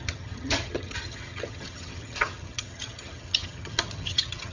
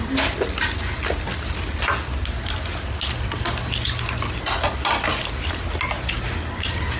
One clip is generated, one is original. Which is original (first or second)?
second